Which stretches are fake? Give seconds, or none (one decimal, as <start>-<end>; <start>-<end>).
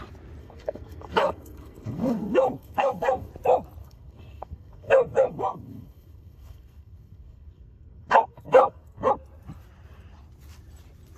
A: 0.4-3.3; 3.8-9.1